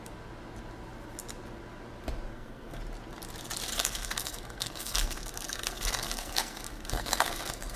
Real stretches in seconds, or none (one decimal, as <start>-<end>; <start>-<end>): 0.0-2.3; 2.8-3.7